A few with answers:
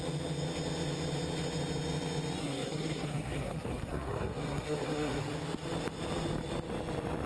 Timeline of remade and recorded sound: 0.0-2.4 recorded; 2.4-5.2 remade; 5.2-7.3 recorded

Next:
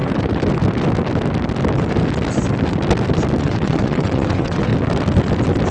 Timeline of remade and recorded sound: 0.0-3.4 recorded; 3.4-4.7 remade; 4.7-5.7 recorded

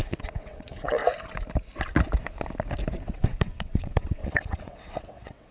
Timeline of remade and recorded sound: 0.0-1.0 remade; 1.0-3.0 recorded; 3.0-5.5 remade

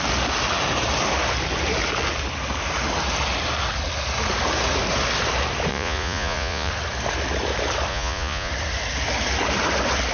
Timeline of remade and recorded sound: 0.0-5.7 recorded; 5.7-6.7 remade; 6.7-7.9 recorded; 7.9-8.5 remade; 8.5-10.1 recorded

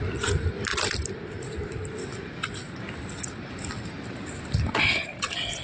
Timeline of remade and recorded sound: 0.0-5.6 recorded